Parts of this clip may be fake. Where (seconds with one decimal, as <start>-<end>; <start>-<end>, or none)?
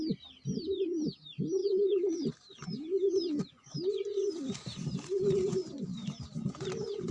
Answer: 1.6-2.3